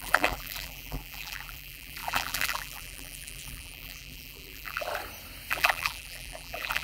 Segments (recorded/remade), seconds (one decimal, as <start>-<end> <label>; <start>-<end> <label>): 0.0-4.9 remade; 4.9-5.5 recorded; 5.5-6.8 remade